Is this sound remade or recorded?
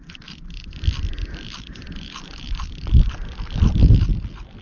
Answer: recorded